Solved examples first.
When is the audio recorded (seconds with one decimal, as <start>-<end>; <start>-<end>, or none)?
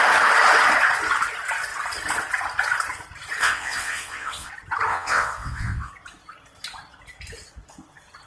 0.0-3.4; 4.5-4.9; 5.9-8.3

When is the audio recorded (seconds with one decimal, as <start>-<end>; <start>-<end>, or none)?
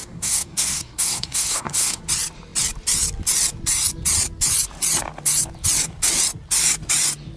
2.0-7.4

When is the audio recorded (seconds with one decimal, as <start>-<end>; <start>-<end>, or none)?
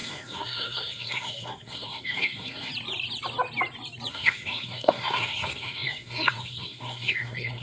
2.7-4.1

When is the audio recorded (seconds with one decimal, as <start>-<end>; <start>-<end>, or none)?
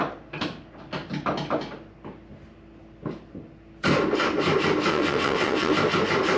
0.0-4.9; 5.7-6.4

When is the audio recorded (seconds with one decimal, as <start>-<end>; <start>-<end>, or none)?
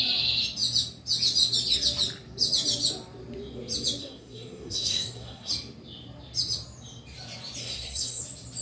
0.0-4.0; 5.5-7.6; 8.2-8.6